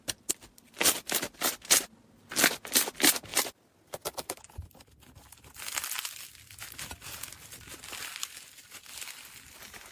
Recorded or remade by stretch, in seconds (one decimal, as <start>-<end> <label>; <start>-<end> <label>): 0.0-9.9 recorded